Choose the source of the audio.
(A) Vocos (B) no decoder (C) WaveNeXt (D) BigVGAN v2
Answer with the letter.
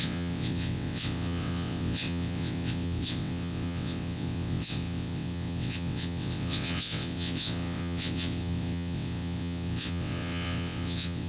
C